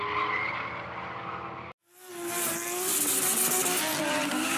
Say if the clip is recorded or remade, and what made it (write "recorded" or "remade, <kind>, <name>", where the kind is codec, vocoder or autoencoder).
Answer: recorded